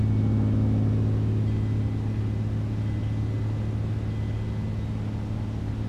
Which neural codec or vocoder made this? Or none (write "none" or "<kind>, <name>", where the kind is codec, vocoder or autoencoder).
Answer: none